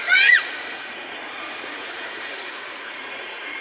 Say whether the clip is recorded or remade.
remade